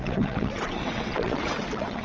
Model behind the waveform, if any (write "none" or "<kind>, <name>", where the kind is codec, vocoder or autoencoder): vocoder, WaveNeXt